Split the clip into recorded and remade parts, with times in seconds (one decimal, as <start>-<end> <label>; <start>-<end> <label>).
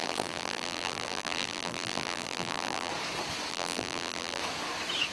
0.0-2.9 remade; 2.9-3.5 recorded; 3.5-4.4 remade; 4.4-5.1 recorded